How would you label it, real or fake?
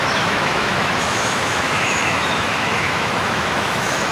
fake